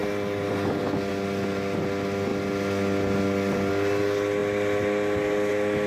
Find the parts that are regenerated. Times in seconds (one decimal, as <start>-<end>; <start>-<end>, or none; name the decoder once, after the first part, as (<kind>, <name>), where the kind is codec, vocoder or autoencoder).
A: none